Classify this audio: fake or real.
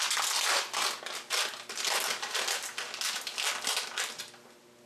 real